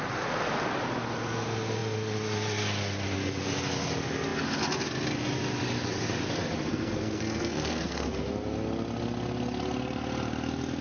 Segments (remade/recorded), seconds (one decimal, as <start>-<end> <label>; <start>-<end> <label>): 0.0-6.7 recorded; 6.7-8.3 remade; 8.3-10.8 recorded